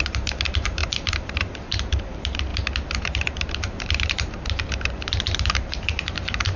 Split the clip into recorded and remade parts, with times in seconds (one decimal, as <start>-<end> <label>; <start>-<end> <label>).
0.0-2.5 remade; 2.5-3.0 recorded; 3.0-6.6 remade